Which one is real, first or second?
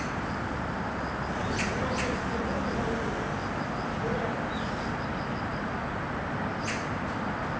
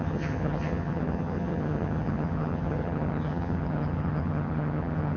first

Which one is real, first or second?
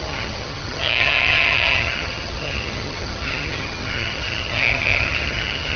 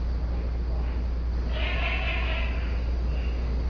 second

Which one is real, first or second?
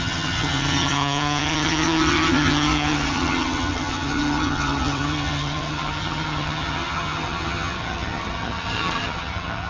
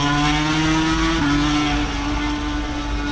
second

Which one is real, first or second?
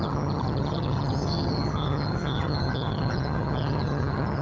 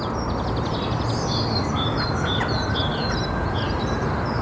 second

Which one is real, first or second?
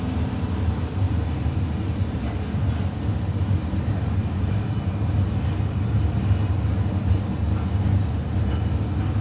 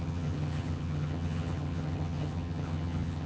first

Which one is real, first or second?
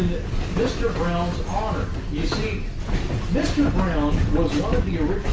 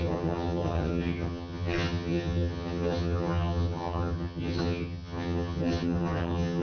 first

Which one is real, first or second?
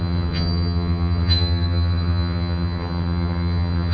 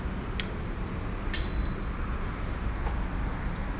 second